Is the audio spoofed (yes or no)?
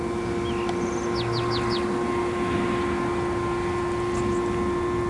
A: no